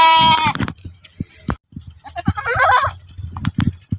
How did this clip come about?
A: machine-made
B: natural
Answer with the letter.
B